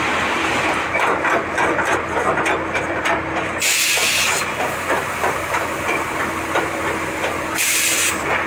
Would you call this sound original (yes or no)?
no